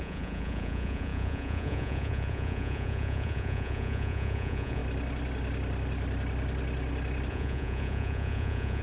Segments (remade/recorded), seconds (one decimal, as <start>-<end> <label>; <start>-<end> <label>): 0.0-4.8 remade; 4.8-7.3 recorded; 7.3-8.8 remade